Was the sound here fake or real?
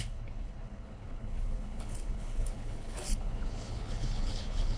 fake